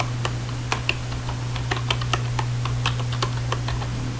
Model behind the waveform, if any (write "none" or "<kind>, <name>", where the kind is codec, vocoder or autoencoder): none